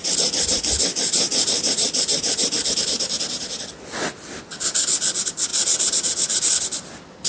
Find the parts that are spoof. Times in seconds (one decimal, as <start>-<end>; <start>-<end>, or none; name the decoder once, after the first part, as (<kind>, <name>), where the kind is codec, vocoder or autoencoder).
0.0-2.2 (vocoder, BigVGAN v2)